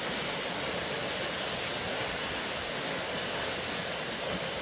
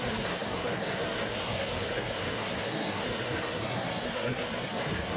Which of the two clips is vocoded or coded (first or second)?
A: second